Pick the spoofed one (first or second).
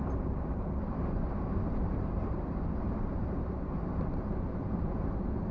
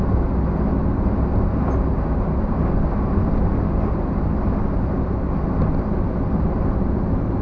first